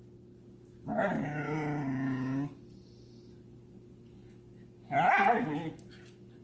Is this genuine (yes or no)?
yes